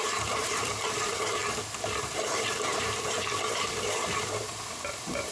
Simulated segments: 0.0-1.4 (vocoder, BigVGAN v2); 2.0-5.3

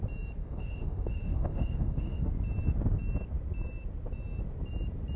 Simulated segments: 0.4-2.3 (autoencoder, DAC-VAE)

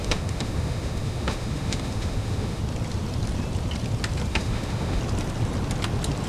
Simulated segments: 0.0-2.6 (autoencoder, DAC-VAE); 4.3-5.0

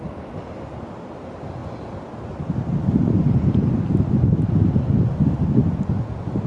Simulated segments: none

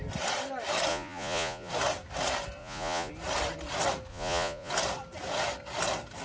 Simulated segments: 0.9-1.7 (vocoder, Vocos); 2.6-3.1; 4.1-4.7

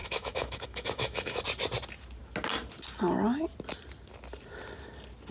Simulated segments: 0.0-1.4 (autoencoder, DAC-VAE)

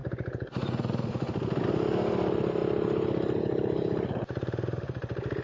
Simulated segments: none

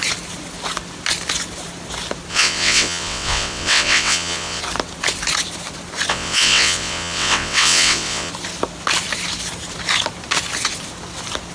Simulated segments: 2.3-4.6 (vocoder, WaveNeXt); 6.1-8.3